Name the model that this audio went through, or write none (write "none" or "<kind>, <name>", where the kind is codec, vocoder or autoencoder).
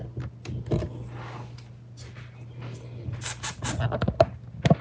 none